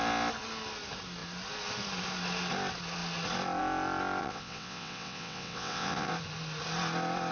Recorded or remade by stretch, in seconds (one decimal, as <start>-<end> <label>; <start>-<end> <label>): 0.0-4.2 recorded; 4.2-6.1 remade; 6.1-7.3 recorded